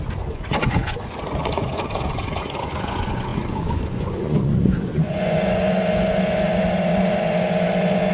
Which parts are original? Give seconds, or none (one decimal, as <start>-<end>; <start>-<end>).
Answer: none